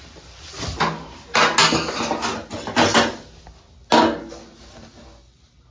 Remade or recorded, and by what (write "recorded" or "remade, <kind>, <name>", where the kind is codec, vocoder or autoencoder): recorded